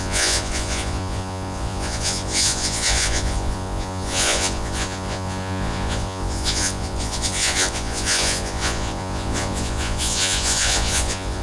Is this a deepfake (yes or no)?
yes